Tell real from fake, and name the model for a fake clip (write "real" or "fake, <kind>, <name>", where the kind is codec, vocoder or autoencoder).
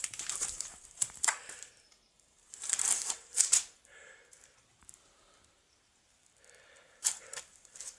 fake, vocoder, BigVGAN v2